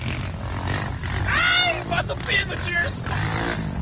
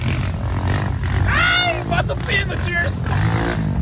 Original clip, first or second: second